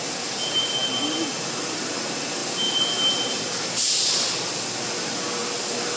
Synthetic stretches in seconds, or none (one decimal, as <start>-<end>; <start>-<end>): none